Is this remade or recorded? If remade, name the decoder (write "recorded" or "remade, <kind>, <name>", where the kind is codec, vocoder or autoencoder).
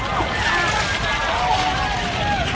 recorded